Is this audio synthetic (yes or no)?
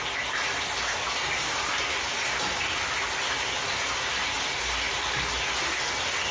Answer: no